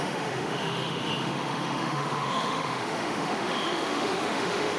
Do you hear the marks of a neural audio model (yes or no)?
yes